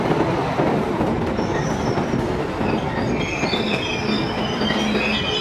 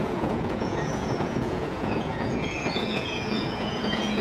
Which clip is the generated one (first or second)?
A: second